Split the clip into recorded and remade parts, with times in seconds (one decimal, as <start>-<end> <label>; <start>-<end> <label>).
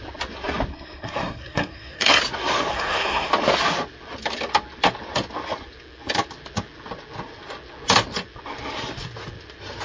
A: 0.0-0.7 recorded; 0.7-2.2 remade; 2.2-2.7 recorded; 2.7-3.3 remade; 3.3-9.8 recorded